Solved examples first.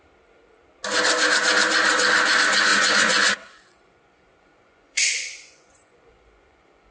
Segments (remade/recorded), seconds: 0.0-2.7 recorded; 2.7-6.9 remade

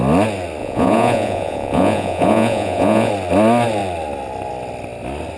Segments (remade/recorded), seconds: 0.0-0.6 recorded; 0.6-3.1 remade; 3.1-5.4 recorded

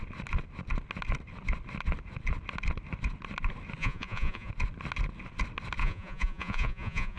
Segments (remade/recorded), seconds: 0.0-3.8 recorded; 3.8-4.5 remade; 4.5-5.8 recorded; 5.8-7.2 remade

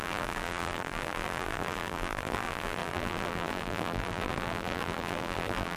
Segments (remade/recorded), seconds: 0.0-5.8 remade

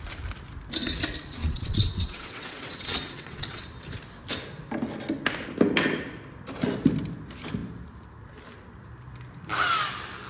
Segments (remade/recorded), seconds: 0.0-1.4 recorded; 1.4-3.6 remade; 3.6-10.3 recorded

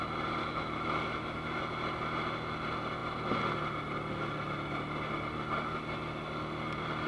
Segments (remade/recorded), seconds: 0.0-0.4 recorded; 0.4-1.6 remade; 1.6-7.1 recorded